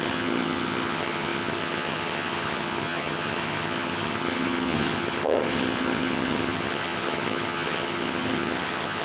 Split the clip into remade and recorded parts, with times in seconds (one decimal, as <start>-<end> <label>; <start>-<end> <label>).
0.0-9.0 remade